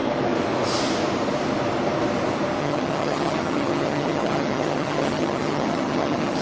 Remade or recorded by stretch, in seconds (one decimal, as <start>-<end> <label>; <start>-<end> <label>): 0.0-2.6 recorded; 2.6-6.4 remade